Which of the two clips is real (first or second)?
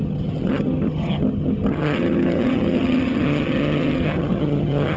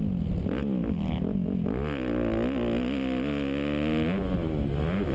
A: second